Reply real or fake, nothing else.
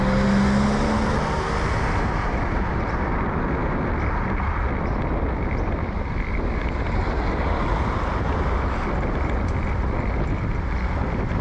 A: real